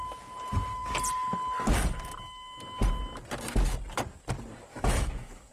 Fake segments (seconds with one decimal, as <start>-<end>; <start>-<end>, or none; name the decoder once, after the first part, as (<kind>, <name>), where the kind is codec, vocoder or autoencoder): 4.7-5.5 (autoencoder, DAC-VAE)